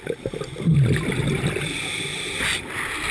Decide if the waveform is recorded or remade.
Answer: recorded